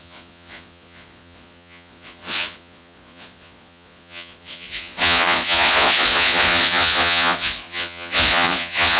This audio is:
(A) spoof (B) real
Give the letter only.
A